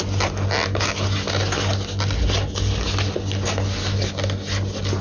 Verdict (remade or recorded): recorded